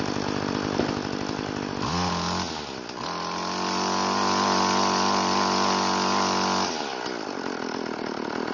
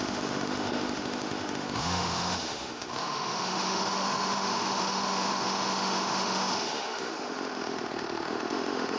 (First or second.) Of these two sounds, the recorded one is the first